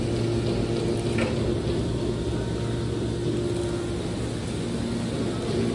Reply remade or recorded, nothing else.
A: recorded